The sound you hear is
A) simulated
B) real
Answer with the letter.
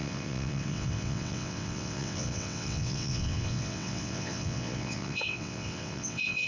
A